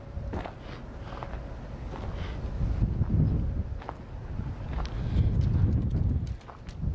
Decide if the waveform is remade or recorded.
recorded